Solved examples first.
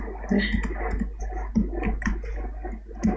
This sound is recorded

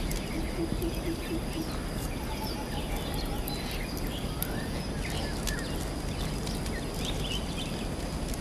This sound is recorded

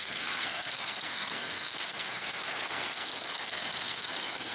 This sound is remade